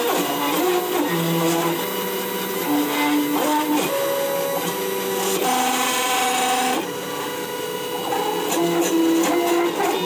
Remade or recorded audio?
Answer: recorded